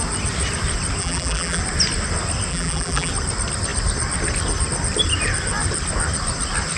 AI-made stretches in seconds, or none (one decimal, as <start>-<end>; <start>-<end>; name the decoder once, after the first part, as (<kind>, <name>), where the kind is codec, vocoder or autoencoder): 1.0-1.6 (vocoder, BigVGAN v2); 2.5-3.1